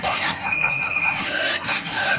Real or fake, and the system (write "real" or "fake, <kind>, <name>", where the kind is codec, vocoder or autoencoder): fake, codec, SNAC